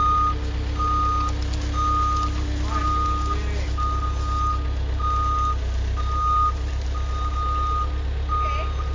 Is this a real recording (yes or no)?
yes